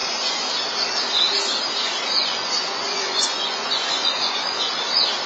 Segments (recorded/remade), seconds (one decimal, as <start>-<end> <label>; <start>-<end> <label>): 0.0-0.5 remade; 0.5-2.1 recorded; 2.1-4.7 remade; 4.7-5.3 recorded